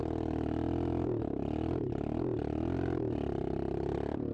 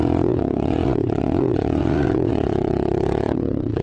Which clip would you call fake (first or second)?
second